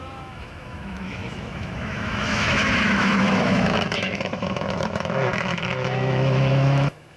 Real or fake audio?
fake